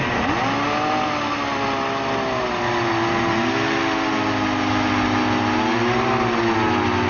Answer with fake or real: real